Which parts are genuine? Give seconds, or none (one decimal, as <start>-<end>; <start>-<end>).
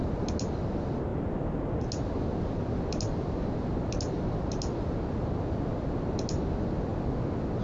0.0-7.6